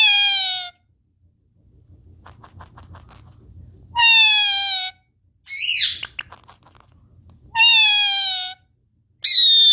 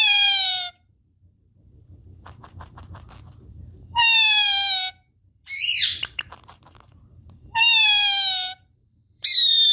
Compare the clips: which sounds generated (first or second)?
second